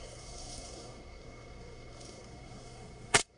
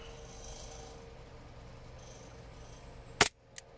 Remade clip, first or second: first